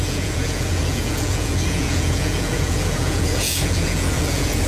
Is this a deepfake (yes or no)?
yes